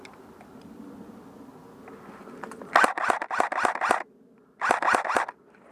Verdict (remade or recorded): recorded